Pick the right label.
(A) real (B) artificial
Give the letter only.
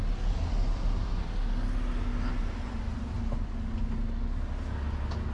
A